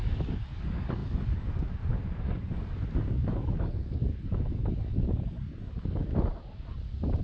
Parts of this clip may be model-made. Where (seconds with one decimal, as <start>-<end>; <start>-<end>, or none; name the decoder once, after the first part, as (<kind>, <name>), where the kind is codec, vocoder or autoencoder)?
0.0-6.0 (codec, DAC)